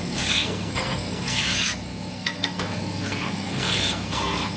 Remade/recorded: remade